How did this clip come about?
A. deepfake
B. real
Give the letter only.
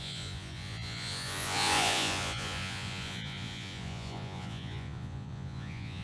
A